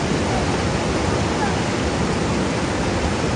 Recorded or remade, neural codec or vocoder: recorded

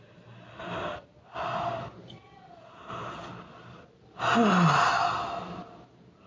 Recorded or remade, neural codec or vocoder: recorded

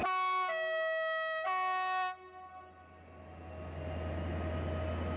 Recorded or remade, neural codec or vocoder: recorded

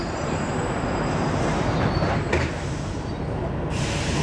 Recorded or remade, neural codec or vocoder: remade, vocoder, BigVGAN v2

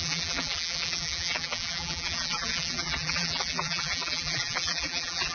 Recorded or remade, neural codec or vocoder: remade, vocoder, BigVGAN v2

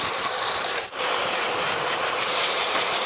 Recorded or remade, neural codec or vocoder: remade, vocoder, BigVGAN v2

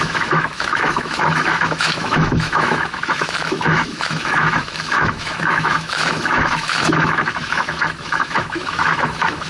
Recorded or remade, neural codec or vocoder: remade, autoencoder, DAC-VAE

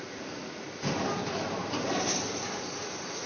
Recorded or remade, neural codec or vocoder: recorded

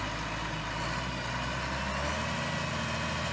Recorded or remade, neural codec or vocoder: recorded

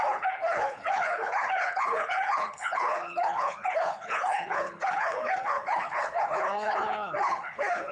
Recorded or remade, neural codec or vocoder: remade, codec, HILCodec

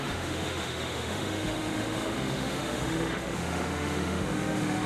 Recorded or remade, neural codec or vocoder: remade, autoencoder, DAC-VAE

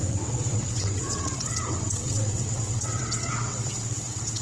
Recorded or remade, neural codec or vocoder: remade, vocoder, WaveNeXt